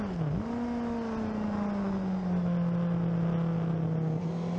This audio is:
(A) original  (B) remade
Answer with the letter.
A